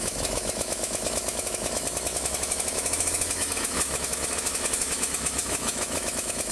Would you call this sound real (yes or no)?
no